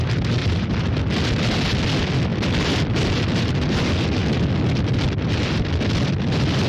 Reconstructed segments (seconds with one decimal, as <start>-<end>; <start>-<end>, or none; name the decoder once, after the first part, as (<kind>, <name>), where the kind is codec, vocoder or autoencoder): 0.4-1.0 (vocoder, BigVGAN v2); 2.3-2.9